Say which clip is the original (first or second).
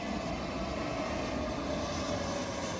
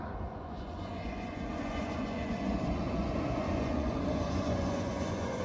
first